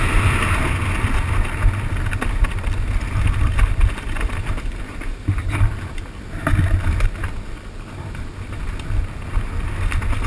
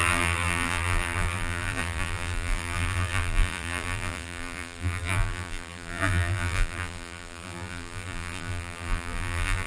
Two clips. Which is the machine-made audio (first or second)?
second